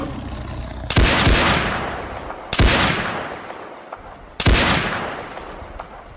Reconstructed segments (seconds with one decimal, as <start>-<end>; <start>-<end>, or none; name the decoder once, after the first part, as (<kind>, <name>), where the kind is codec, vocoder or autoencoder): none